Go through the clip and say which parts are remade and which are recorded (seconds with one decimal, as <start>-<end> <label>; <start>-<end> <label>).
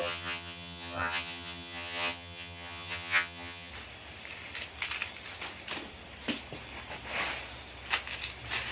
0.0-3.7 remade; 3.7-8.7 recorded